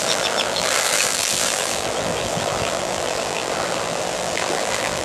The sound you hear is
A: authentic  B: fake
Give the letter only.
B